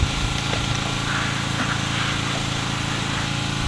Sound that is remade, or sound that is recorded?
recorded